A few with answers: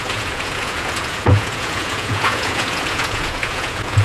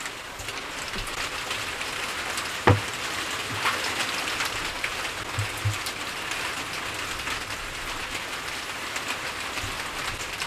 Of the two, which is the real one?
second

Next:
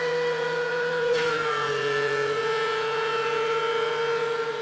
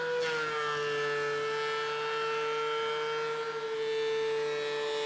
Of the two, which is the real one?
second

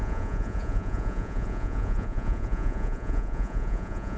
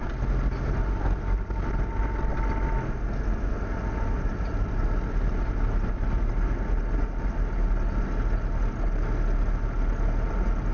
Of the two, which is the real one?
second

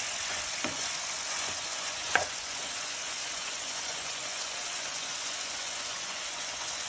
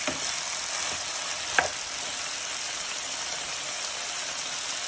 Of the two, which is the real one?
second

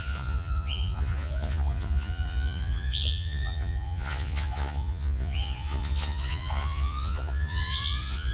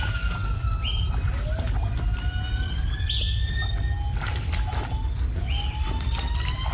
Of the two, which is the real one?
second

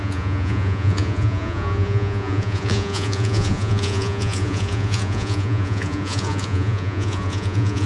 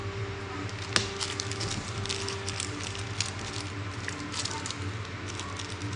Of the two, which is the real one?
second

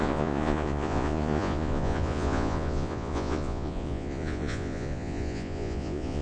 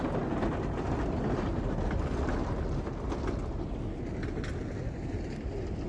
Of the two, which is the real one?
second